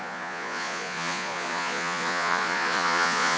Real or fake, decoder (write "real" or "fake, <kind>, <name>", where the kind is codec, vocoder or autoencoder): fake, vocoder, Vocos